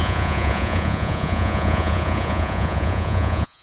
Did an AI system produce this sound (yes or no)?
yes